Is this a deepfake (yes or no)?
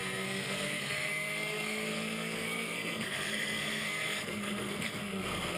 yes